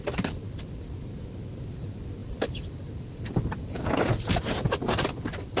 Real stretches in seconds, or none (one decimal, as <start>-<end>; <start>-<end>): 0.0-5.6